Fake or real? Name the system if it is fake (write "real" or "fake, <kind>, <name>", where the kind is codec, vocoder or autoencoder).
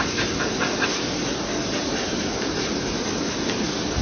real